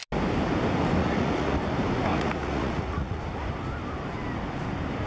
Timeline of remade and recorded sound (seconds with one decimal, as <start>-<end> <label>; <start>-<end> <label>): 0.0-1.0 recorded; 1.0-1.6 remade; 1.6-2.1 recorded; 2.1-3.2 remade; 3.2-5.1 recorded